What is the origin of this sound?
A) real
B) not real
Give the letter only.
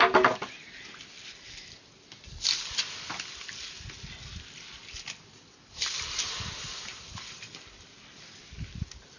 A